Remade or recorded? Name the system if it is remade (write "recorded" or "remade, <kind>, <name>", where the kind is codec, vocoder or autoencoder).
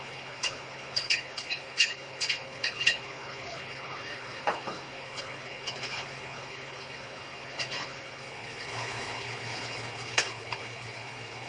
remade, codec, HILCodec